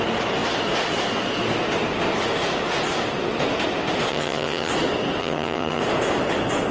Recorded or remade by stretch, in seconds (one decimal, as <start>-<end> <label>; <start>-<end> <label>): 0.0-4.1 recorded; 4.1-4.7 remade; 4.7-5.2 recorded; 5.2-5.8 remade; 5.8-6.7 recorded